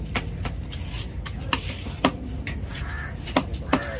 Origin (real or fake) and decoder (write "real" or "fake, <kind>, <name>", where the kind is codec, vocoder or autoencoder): real